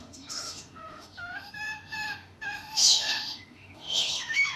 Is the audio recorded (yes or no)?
no